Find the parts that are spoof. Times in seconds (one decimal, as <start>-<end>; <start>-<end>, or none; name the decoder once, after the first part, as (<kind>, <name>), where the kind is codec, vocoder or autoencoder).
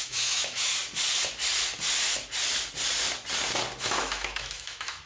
0.0-0.7 (autoencoder, DAC-VAE); 3.8-5.1